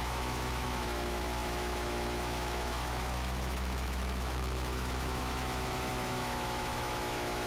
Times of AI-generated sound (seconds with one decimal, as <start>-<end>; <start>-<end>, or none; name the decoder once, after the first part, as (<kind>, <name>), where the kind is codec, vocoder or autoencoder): 0.0-7.5 (autoencoder, DAC-VAE)